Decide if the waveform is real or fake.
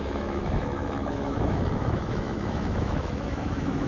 fake